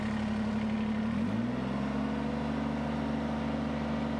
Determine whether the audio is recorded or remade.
recorded